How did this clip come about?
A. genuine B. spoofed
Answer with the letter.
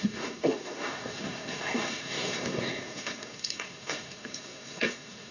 B